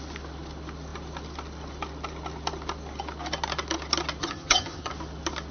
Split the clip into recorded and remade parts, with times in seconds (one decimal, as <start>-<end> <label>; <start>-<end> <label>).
0.0-4.2 recorded; 4.2-4.9 remade; 4.9-5.5 recorded